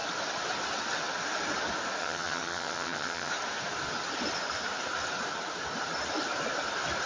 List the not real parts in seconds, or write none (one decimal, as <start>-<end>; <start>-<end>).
2.0-3.3